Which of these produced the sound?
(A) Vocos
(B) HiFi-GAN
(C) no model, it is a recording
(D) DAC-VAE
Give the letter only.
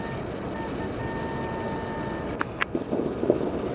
C